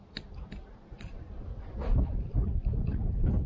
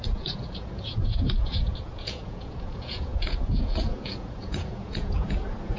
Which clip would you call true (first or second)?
first